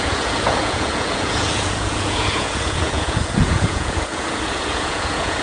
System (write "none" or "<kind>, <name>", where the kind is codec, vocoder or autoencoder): vocoder, Vocos